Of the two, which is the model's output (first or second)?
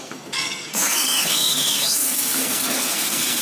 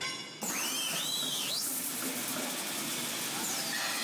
first